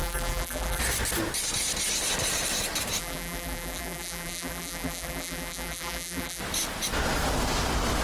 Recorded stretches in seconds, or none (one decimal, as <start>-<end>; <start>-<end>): 0.8-3.0; 6.4-8.0